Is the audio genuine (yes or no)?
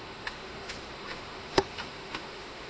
no